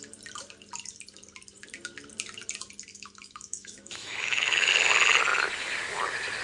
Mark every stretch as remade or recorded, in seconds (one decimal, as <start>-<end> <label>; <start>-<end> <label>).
0.0-2.9 recorded; 2.9-4.7 remade; 4.7-6.4 recorded